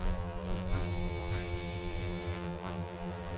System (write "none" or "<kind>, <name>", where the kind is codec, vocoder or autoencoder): vocoder, BigVGAN v2